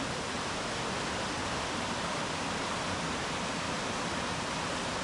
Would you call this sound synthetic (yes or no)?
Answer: no